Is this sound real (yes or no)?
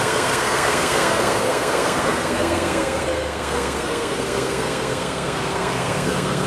no